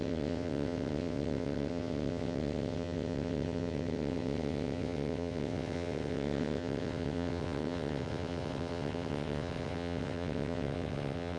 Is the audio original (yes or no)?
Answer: no